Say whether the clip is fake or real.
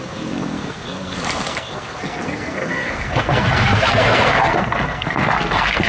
fake